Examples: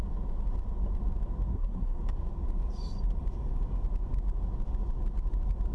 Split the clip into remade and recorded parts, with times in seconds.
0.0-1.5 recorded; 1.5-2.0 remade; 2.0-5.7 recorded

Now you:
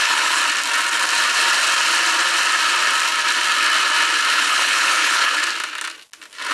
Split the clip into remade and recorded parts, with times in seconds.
0.0-0.4 remade; 0.4-4.3 recorded; 4.3-5.4 remade; 5.4-6.5 recorded

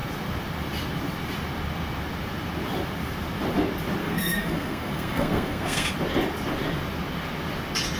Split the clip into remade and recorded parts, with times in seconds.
0.0-4.0 recorded; 4.0-5.9 remade; 5.9-8.0 recorded